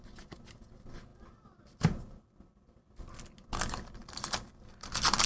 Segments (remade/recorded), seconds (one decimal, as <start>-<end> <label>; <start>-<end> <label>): 0.0-1.1 recorded; 1.1-3.1 remade; 3.1-5.3 recorded